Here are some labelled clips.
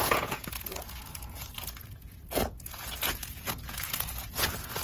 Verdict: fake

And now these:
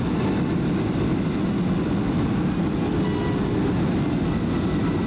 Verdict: real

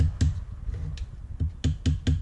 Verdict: real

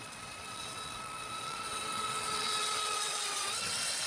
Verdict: fake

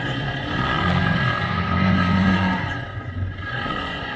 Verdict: fake